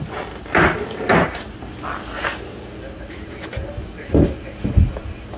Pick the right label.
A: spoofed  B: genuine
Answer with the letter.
B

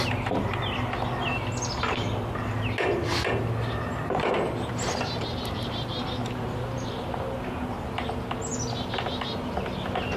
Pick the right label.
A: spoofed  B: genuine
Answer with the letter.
B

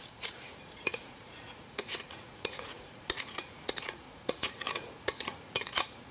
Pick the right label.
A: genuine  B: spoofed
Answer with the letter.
B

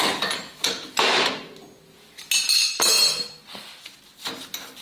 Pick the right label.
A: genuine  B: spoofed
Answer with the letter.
A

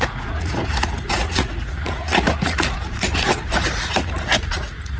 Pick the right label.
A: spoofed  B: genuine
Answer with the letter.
A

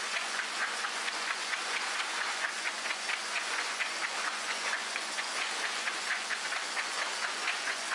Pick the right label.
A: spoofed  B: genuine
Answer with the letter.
A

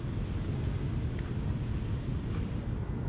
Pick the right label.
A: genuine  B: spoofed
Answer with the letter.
A